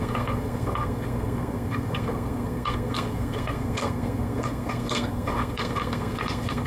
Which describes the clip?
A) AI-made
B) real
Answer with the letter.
A